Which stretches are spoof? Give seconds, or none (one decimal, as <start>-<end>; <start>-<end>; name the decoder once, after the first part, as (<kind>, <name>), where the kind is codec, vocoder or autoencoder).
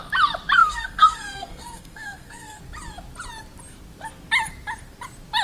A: 0.6-2.6 (codec, SNAC)